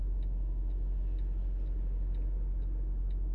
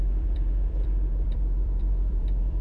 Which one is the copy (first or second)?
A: second